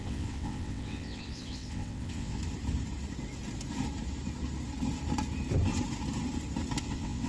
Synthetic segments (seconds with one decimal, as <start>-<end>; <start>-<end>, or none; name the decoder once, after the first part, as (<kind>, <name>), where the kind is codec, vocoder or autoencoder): 0.0-2.4 (vocoder, WaveNeXt); 6.8-7.3